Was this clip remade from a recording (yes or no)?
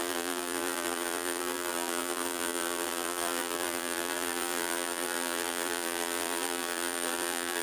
yes